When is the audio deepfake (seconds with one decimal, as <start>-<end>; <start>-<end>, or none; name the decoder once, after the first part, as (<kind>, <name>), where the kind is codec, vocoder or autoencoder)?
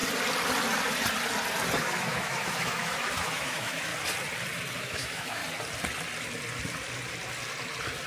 1.8-3.9 (autoencoder, DAC-VAE); 4.8-5.4